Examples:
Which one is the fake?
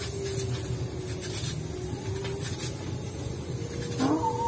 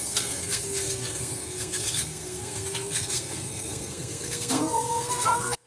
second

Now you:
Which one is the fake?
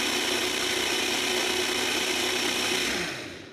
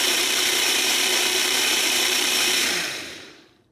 second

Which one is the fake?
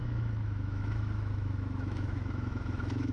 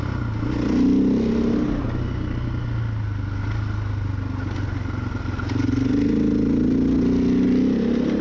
first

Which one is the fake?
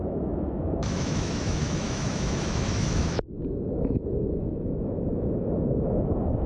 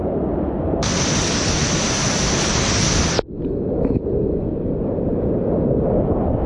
first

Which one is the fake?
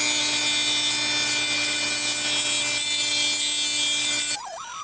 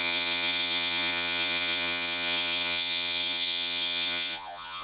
second